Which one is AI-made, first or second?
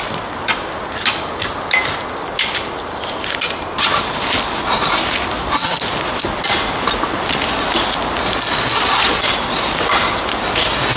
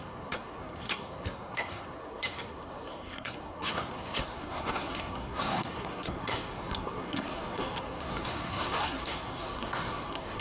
second